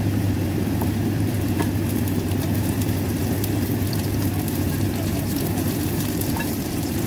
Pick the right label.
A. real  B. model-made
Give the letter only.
B